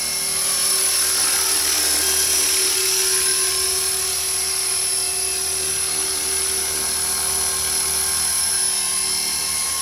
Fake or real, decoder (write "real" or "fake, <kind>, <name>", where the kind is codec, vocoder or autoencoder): real